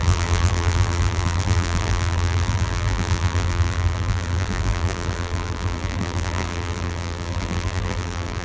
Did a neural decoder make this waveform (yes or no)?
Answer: yes